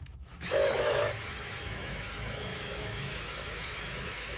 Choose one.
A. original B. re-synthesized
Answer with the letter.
B